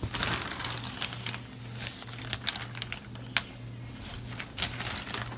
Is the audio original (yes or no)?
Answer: yes